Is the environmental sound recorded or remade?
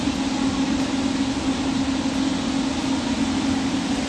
recorded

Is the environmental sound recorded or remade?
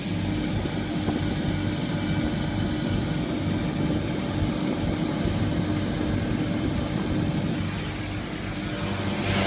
recorded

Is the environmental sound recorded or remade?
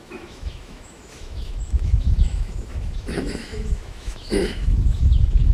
remade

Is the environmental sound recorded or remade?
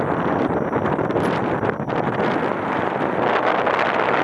recorded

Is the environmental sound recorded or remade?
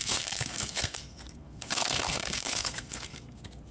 remade